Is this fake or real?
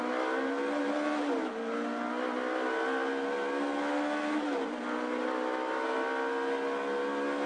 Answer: real